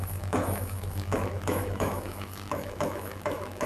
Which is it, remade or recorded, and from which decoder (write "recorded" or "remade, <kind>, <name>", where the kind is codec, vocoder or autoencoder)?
remade, autoencoder, DAC-VAE